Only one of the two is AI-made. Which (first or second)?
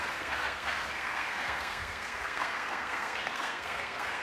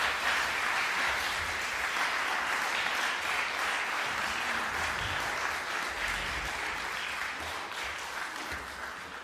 first